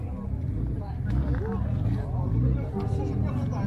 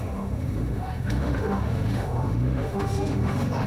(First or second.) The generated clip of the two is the second